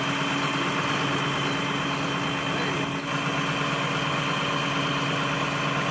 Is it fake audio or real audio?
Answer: real